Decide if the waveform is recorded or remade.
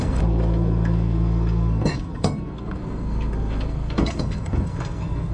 remade